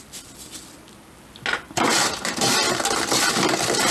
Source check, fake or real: real